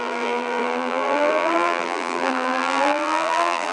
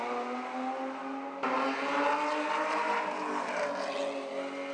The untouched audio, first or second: second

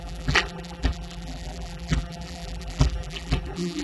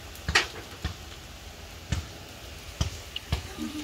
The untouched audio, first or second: second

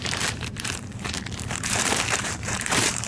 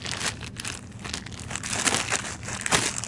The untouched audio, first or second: second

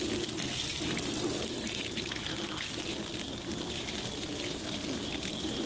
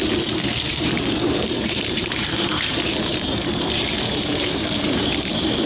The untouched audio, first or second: first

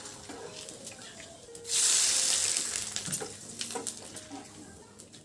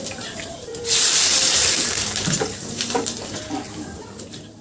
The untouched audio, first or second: first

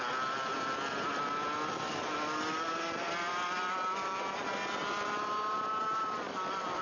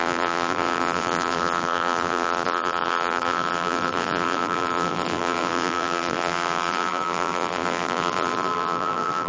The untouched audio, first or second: first